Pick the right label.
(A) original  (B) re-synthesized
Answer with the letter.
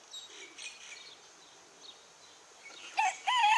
A